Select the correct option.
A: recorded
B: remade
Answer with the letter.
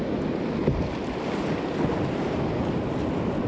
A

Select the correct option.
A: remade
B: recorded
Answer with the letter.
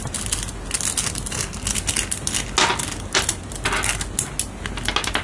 B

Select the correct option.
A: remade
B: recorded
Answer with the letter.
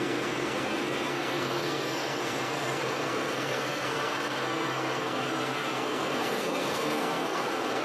A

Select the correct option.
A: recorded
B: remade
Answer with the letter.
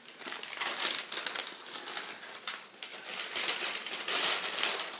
A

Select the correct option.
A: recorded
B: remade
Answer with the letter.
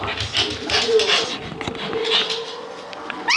A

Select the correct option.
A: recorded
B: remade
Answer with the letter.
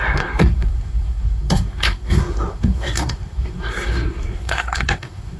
B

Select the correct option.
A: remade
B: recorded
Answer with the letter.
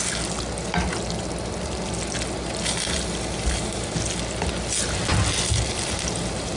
B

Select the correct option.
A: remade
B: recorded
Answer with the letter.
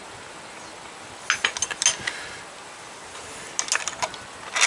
B